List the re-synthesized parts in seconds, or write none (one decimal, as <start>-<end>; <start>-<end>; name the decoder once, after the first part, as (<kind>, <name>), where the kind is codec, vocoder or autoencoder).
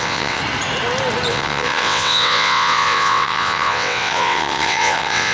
0.0-0.4 (vocoder, WaveNeXt); 1.3-5.3